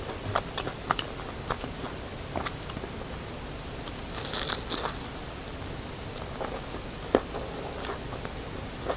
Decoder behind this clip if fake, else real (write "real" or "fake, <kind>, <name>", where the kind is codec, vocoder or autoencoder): real